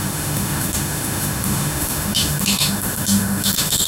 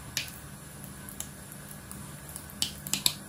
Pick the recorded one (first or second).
second